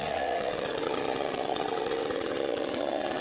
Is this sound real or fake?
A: fake